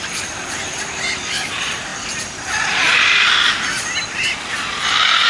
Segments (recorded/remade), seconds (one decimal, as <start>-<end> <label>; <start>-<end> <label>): 0.0-5.3 recorded